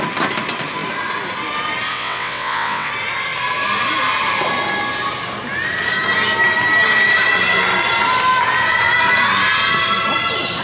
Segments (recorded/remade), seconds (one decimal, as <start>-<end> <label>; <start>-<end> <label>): 0.0-1.9 recorded; 1.9-2.9 remade; 2.9-10.6 recorded